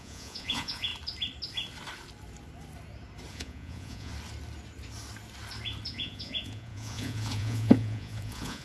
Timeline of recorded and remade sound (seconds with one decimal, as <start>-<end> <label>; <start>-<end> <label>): 0.0-0.9 remade; 0.9-3.3 recorded; 3.3-4.1 remade; 4.1-5.9 recorded; 5.9-8.6 remade